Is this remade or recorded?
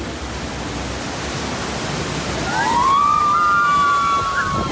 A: recorded